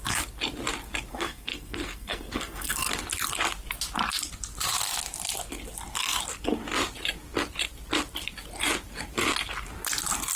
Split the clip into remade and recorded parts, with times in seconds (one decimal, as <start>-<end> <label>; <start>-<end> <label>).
0.0-1.1 recorded; 1.1-2.9 remade; 2.9-10.4 recorded